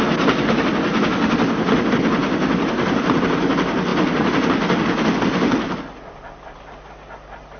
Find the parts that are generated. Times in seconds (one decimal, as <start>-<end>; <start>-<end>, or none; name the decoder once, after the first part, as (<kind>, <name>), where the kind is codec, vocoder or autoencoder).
none